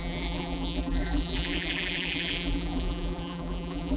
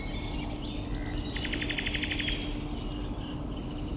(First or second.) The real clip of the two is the second